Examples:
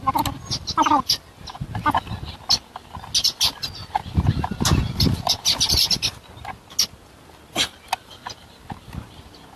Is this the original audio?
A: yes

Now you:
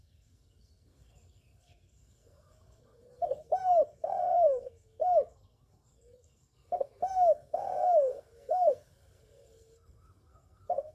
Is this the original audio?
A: no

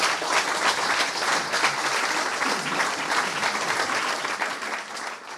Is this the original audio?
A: yes